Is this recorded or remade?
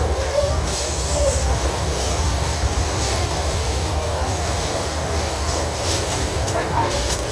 remade